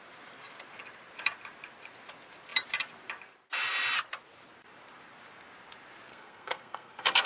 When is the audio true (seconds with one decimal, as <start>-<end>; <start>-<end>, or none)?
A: 0.0-6.1

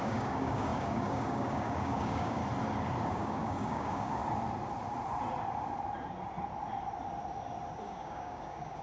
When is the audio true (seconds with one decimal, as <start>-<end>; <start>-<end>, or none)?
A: 2.4-3.1; 4.2-7.8

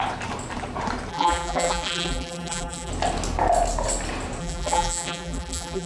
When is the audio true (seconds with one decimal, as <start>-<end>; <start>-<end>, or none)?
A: 0.0-1.1; 2.9-4.4

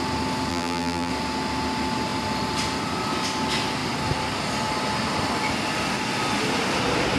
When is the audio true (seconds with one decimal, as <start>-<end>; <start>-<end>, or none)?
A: 0.0-0.5; 1.1-7.2